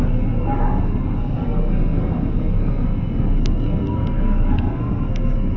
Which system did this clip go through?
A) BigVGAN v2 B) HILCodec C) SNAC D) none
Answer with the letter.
C